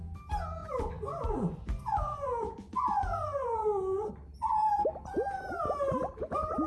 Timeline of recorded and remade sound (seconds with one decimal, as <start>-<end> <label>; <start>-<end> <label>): 0.0-0.6 recorded; 0.6-4.1 remade; 4.1-6.7 recorded